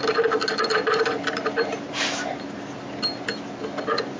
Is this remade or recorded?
recorded